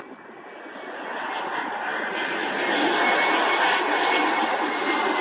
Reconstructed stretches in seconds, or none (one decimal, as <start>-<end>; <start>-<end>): none